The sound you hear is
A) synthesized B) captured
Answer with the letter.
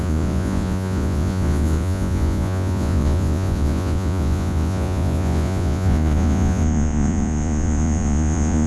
A